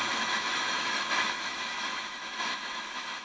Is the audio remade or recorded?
remade